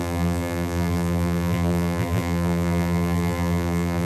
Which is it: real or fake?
fake